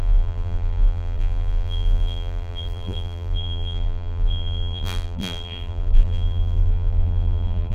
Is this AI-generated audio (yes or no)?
yes